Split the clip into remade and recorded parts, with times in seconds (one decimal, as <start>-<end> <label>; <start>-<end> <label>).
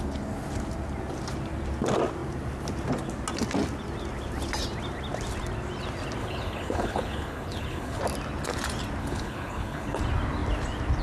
0.0-6.2 recorded; 6.2-8.0 remade; 8.0-9.0 recorded; 9.0-10.0 remade; 10.0-11.0 recorded